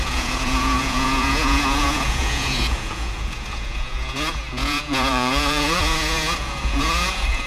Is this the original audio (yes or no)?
no